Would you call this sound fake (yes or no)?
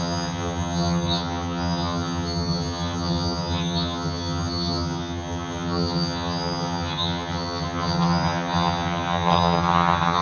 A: yes